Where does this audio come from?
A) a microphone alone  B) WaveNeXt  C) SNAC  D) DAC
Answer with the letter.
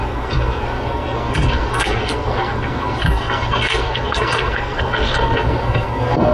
C